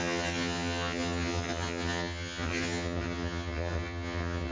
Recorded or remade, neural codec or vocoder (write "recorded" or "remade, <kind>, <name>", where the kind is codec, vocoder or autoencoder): remade, vocoder, HiFi-GAN